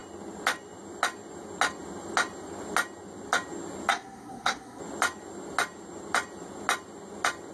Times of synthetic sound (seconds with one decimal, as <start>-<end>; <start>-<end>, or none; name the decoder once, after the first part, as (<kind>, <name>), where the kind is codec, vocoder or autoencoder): 3.9-4.8 (codec, SNAC)